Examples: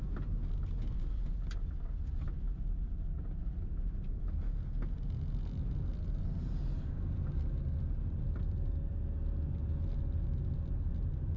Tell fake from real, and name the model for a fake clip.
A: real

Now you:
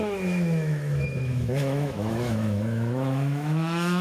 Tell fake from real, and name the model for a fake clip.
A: fake, autoencoder, DAC-VAE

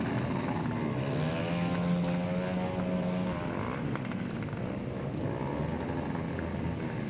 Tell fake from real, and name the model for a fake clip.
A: real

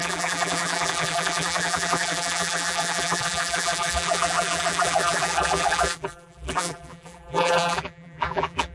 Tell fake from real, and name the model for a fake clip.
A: fake, vocoder, BigVGAN v2